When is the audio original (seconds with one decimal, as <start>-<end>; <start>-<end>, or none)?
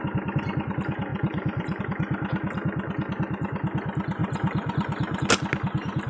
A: 0.0-1.1; 1.8-4.2; 5.3-6.1